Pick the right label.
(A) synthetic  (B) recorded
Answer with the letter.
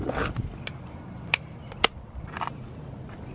B